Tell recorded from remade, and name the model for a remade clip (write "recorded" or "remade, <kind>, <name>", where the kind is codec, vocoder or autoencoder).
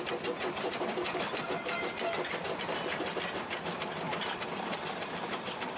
recorded